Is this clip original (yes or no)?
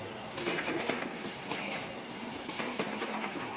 no